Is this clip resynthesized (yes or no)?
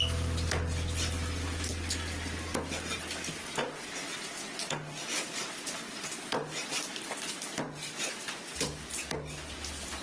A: no